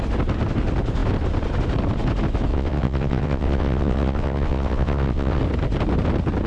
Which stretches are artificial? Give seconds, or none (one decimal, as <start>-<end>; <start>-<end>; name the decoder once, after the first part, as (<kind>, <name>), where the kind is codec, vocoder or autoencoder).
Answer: 2.5-5.4 (vocoder, WaveNeXt)